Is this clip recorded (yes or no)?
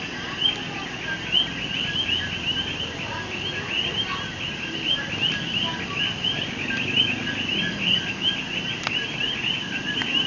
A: yes